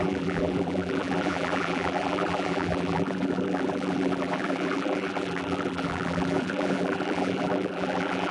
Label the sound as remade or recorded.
remade